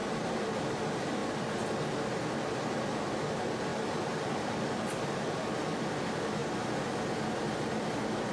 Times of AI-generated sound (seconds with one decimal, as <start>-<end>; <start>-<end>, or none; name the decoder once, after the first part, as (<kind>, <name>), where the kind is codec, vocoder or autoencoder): none